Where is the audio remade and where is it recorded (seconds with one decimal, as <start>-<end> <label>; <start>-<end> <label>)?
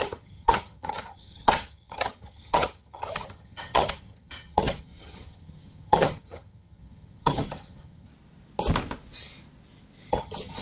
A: 0.0-8.1 remade; 8.1-10.1 recorded; 10.1-10.6 remade